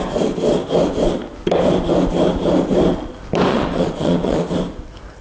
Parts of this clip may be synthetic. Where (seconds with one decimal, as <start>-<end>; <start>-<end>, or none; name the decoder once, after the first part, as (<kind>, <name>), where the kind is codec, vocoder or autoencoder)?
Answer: 3.5-4.5 (vocoder, Vocos)